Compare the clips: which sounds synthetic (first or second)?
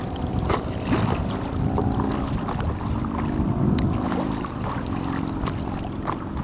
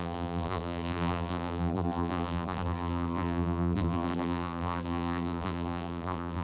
second